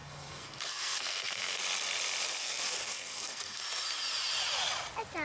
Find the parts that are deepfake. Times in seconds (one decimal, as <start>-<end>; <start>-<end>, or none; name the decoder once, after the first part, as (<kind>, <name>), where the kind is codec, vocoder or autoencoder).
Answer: 0.0-1.6 (codec, SNAC); 2.4-3.6